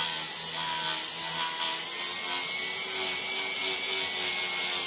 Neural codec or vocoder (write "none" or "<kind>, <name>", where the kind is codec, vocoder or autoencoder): none